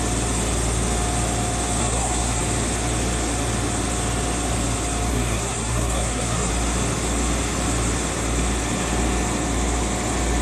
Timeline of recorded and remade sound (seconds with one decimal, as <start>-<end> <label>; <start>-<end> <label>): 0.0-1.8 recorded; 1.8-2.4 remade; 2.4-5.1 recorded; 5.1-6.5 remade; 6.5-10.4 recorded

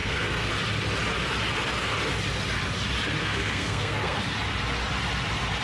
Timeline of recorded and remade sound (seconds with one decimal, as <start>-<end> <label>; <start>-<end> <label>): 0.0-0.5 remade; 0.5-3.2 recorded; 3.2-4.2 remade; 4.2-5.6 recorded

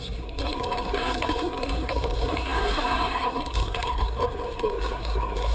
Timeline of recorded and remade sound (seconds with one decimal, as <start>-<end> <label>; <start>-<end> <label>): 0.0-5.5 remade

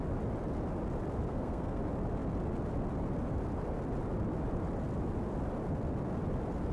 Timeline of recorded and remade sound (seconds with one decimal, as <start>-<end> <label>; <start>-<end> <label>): 0.0-1.3 recorded; 1.3-1.8 remade; 1.8-6.7 recorded

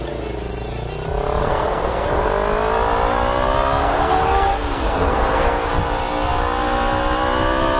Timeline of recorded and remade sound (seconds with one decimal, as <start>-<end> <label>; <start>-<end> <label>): 0.0-1.4 recorded; 1.4-2.3 remade; 2.3-3.8 recorded; 3.8-5.7 remade; 5.7-7.8 recorded

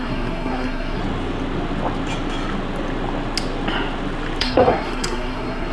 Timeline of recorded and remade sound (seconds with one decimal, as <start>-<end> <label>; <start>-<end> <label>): 0.0-1.0 remade; 1.0-4.4 recorded; 4.4-5.7 remade

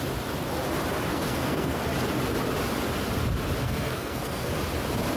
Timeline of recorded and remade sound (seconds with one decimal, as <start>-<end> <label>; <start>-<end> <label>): 0.0-1.1 recorded; 1.1-1.8 remade; 1.8-3.6 recorded; 3.6-4.5 remade; 4.5-5.2 recorded

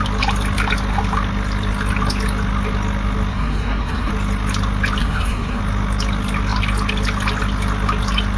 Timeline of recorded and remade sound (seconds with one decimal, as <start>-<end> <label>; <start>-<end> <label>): 0.0-3.3 recorded; 3.3-4.1 remade; 4.1-5.0 recorded; 5.0-5.6 remade; 5.6-8.4 recorded